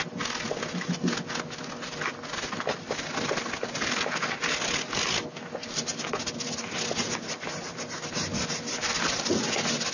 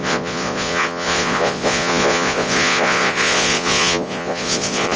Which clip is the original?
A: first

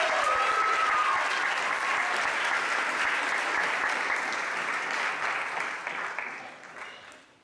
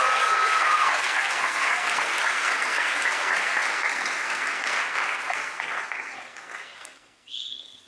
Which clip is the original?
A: first